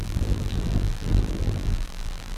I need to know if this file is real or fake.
fake